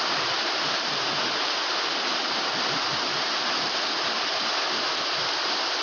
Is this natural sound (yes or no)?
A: yes